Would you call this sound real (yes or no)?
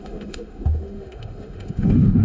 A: no